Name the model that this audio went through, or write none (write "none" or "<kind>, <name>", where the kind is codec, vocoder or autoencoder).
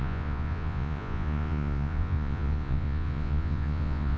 vocoder, Vocos